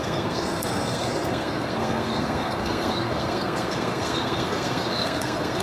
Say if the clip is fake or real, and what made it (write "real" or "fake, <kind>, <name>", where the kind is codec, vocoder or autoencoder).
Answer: fake, codec, SNAC